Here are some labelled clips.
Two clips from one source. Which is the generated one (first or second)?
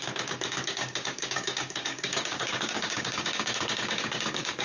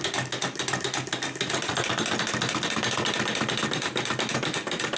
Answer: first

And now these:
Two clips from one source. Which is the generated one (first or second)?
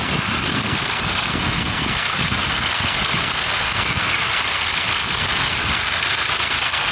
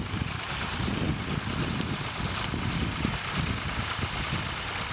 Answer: first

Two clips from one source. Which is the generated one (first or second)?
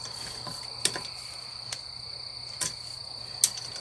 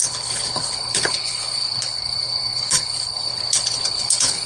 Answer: second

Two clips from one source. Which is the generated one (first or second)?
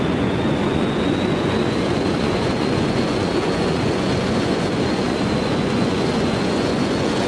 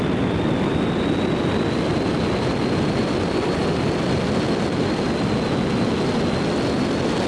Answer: first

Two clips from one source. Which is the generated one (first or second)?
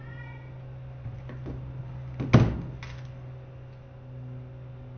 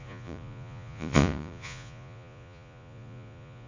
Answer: second